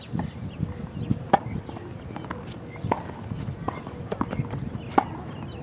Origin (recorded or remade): recorded